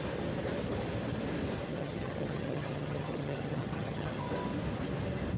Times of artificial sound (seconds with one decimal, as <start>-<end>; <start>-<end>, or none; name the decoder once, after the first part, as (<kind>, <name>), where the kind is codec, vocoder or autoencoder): 1.7-4.3 (vocoder, HiFi-GAN)